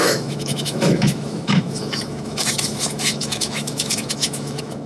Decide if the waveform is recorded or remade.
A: remade